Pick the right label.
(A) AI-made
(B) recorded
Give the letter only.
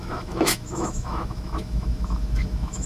A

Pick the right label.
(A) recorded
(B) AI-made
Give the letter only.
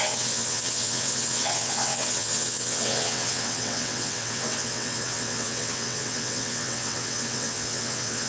B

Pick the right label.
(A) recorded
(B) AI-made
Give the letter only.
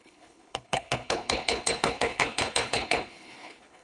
B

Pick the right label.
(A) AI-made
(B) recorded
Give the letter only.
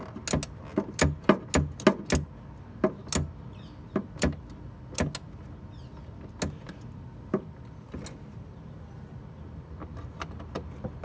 B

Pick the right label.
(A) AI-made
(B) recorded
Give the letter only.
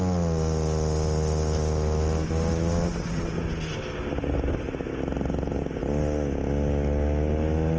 B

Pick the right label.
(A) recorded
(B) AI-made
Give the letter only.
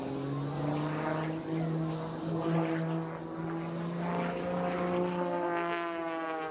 A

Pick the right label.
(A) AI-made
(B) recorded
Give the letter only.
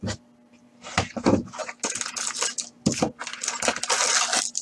B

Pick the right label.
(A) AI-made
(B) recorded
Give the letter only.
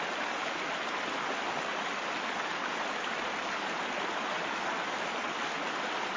B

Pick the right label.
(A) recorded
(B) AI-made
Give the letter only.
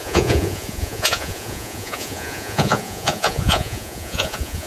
B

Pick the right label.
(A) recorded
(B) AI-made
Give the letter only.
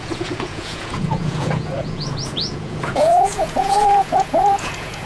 B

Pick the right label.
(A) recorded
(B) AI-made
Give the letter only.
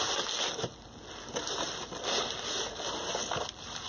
A